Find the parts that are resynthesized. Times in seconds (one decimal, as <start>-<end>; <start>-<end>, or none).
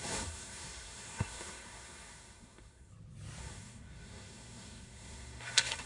0.0-2.9; 3.4-5.9